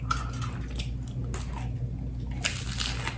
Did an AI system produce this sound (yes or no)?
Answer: no